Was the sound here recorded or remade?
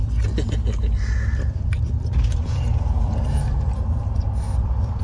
recorded